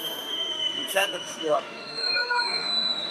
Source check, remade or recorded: remade